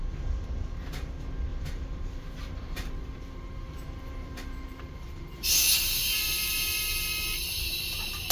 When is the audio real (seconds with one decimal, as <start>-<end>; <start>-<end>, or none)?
0.0-1.5; 6.2-8.3